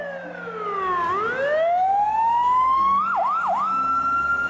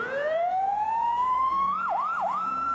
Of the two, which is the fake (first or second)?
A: second